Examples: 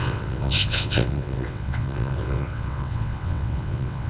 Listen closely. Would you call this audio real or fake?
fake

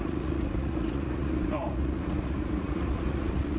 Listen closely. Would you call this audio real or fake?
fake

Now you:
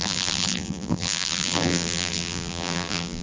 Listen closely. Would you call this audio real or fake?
fake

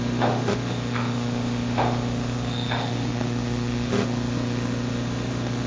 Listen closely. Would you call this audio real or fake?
fake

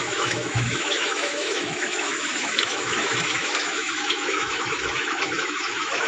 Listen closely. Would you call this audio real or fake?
fake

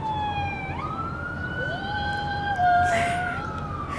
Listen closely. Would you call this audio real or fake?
real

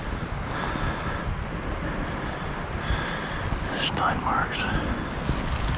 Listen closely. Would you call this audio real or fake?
real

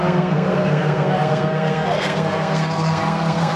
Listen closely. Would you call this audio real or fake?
fake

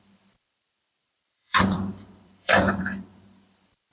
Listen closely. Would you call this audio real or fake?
fake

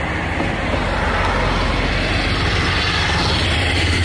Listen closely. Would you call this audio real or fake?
real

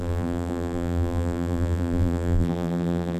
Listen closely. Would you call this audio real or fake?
fake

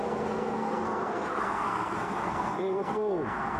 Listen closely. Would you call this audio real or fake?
fake